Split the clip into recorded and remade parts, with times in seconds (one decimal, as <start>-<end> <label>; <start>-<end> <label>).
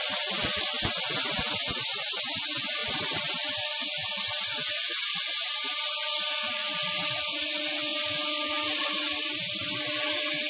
0.0-10.5 recorded